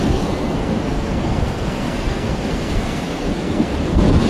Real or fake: fake